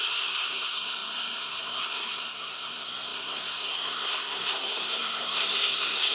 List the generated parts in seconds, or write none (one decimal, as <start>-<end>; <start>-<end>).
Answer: 0.0-6.1